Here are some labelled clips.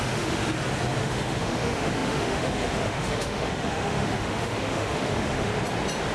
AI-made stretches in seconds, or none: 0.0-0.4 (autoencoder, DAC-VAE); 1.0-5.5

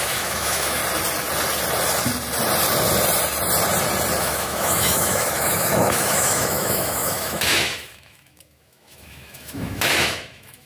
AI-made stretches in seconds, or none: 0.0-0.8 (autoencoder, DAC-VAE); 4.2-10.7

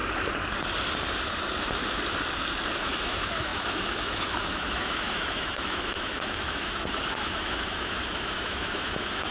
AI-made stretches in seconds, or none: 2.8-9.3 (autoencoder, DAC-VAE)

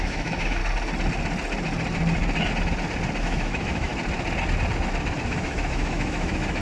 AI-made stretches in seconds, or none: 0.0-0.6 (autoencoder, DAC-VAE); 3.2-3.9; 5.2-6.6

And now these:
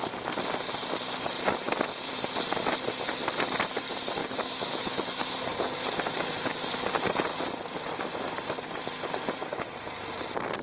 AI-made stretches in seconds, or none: 4.2-5.2 (autoencoder, DAC-VAE)

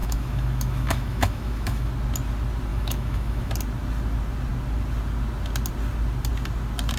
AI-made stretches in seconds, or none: 0.0-1.9 (autoencoder, DAC-VAE); 2.7-3.5